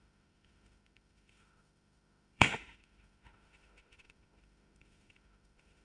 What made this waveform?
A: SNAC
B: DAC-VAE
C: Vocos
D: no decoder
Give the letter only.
B